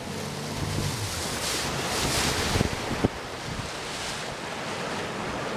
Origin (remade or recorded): recorded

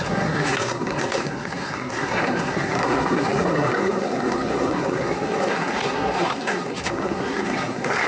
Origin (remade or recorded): remade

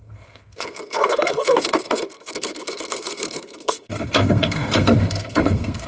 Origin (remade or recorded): remade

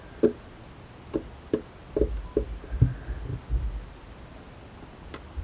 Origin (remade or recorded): recorded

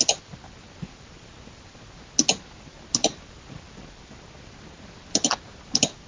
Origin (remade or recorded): recorded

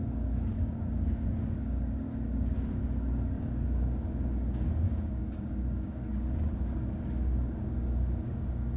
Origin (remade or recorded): remade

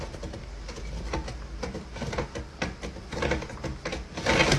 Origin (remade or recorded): recorded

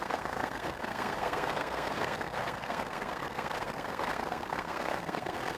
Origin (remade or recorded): remade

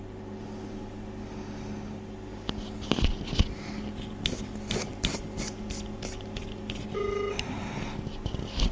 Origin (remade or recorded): recorded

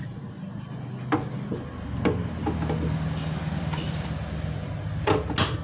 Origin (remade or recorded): recorded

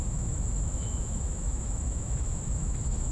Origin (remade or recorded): remade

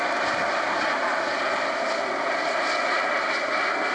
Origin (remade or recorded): recorded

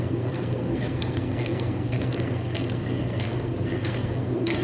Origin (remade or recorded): remade